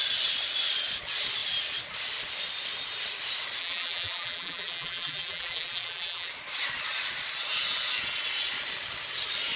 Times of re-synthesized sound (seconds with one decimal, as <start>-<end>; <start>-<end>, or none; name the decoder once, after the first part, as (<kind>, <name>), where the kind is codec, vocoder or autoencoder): 3.6-6.3 (vocoder, BigVGAN v2)